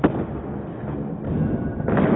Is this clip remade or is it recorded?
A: recorded